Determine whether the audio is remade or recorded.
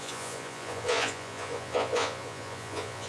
remade